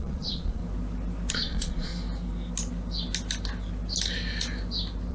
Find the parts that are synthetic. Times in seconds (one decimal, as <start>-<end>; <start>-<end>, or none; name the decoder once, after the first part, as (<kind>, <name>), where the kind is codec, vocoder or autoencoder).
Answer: 0.0-0.6 (vocoder, Vocos); 1.3-1.9